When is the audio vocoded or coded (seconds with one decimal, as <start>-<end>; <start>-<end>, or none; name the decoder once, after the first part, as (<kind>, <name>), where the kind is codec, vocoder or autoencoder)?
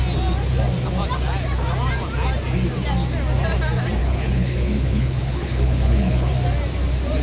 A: 4.0-6.3 (codec, HILCodec)